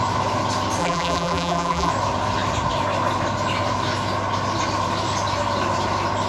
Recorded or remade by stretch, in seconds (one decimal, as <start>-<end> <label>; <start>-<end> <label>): 0.0-0.8 recorded; 0.8-1.9 remade; 1.9-6.3 recorded